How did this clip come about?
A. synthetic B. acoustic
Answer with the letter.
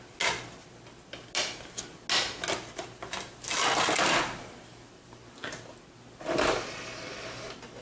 B